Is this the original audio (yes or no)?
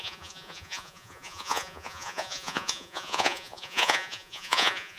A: no